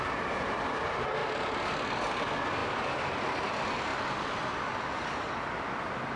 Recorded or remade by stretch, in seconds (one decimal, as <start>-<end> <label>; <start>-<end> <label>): 0.0-6.2 recorded